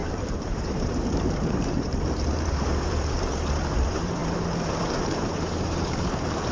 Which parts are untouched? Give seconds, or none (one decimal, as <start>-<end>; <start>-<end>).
4.2-4.8